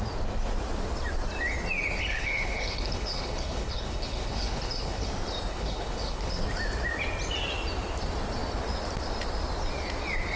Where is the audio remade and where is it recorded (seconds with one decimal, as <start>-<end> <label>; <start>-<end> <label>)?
0.0-2.1 recorded; 2.1-5.1 remade; 5.1-5.5 recorded; 5.5-6.4 remade; 6.4-10.4 recorded